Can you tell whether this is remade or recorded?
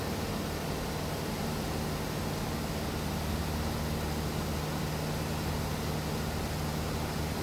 recorded